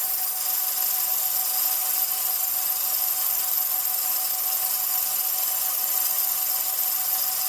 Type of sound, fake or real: real